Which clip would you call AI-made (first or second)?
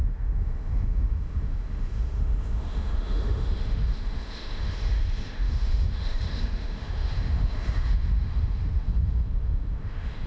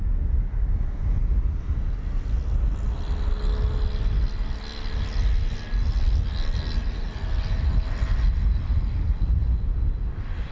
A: first